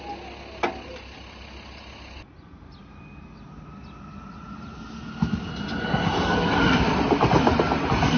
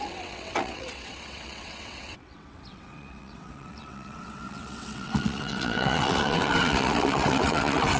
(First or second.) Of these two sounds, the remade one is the second